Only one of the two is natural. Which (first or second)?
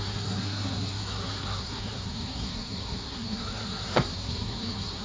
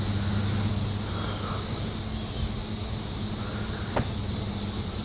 second